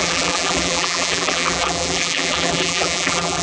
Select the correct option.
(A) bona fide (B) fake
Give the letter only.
B